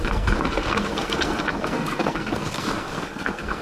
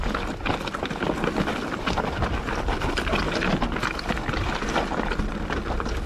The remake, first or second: first